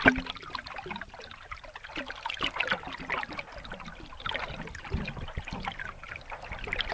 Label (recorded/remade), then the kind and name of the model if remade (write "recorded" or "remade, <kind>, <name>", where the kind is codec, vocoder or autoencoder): recorded